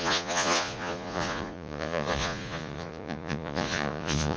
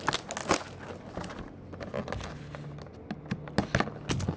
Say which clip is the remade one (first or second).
first